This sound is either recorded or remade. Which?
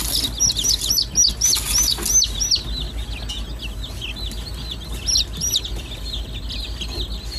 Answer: recorded